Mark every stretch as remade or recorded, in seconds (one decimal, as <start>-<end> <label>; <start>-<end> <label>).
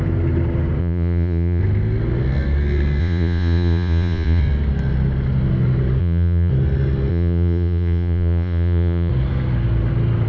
0.0-0.8 recorded; 0.8-1.6 remade; 1.6-3.0 recorded; 3.0-4.4 remade; 4.4-6.0 recorded; 6.0-6.5 remade; 6.5-7.1 recorded; 7.1-9.1 remade; 9.1-10.3 recorded